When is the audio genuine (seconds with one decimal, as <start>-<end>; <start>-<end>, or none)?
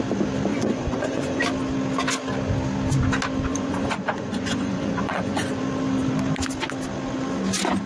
0.0-0.5; 1.4-3.5; 5.6-7.9